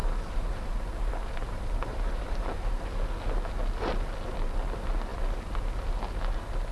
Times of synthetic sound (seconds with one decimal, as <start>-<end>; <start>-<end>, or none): 0.0-2.9